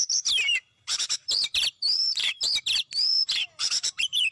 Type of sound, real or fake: fake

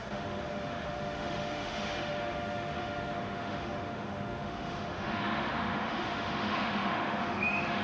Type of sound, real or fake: fake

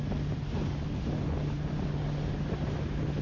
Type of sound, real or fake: real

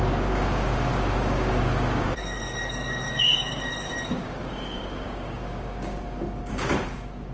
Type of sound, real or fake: fake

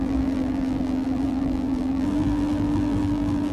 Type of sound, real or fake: fake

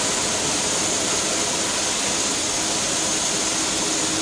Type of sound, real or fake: real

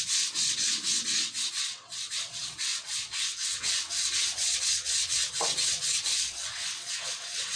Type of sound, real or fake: fake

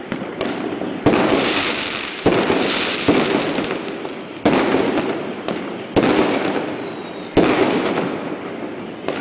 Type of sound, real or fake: fake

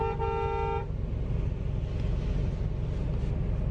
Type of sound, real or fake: real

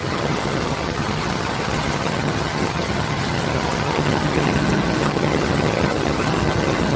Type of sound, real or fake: fake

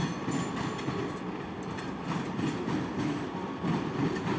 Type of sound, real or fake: real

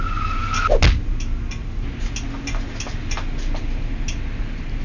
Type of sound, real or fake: real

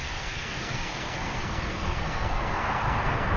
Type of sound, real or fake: fake